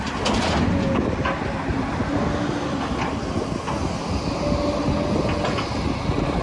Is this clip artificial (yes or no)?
no